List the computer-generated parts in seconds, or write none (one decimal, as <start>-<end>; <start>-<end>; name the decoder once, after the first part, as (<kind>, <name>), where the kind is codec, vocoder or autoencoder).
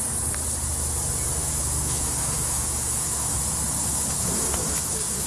1.4-3.4 (autoencoder, DAC-VAE); 3.8-5.3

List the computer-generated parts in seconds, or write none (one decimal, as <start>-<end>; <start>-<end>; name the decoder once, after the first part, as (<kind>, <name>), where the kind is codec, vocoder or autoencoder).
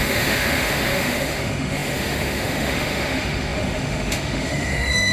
0.0-5.1 (autoencoder, DAC-VAE)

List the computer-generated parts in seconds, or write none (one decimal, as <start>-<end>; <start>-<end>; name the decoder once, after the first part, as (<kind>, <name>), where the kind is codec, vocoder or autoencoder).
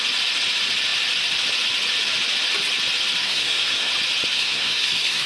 3.2-3.9 (codec, SNAC); 4.3-5.3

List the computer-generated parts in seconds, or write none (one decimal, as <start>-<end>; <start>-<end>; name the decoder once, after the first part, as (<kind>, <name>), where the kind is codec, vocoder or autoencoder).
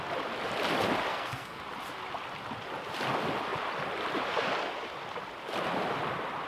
1.1-1.6 (codec, SNAC)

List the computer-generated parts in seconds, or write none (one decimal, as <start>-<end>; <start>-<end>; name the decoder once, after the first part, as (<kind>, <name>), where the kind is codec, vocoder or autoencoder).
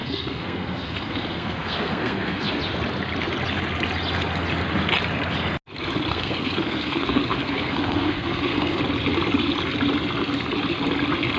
0.0-2.5 (codec, SNAC); 6.1-8.8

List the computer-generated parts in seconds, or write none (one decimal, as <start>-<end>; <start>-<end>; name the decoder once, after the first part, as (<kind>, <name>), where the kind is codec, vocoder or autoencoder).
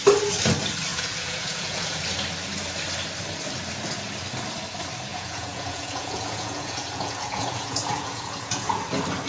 0.9-2.0 (vocoder, Vocos); 5.1-8.8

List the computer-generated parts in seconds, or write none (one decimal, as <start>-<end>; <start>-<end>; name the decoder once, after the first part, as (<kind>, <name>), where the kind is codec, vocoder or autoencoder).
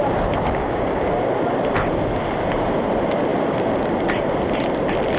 0.6-1.1 (codec, DAC)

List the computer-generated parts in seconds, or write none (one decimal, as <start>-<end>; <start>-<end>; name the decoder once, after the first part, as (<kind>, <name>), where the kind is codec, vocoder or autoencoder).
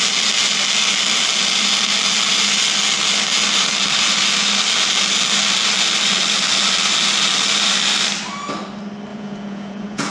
9.1-10.1 (vocoder, Vocos)